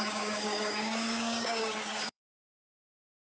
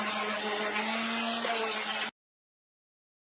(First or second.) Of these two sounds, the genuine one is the second